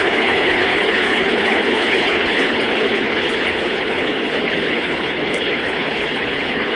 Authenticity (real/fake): fake